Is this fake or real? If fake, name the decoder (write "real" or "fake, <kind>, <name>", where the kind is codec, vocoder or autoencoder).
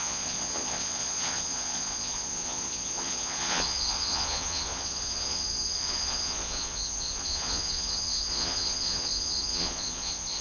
fake, vocoder, Vocos